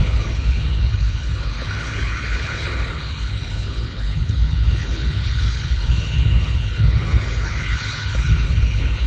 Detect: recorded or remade remade